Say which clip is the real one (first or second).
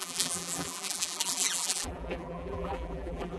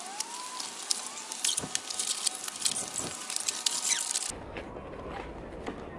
second